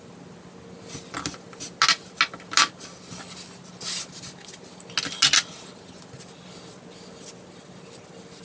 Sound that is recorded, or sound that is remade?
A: recorded